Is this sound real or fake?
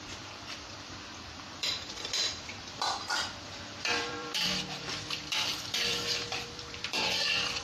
fake